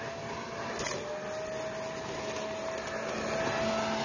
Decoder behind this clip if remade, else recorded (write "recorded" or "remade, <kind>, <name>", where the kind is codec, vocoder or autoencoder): recorded